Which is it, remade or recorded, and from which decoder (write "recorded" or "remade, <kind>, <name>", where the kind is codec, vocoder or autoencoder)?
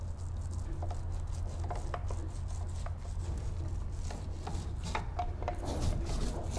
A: recorded